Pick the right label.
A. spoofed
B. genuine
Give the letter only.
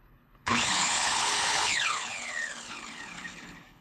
A